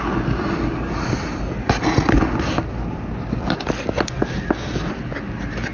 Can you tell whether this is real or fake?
real